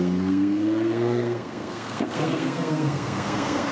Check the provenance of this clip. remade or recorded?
remade